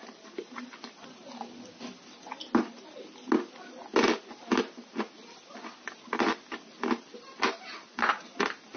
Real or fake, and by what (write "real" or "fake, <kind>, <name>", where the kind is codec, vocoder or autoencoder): real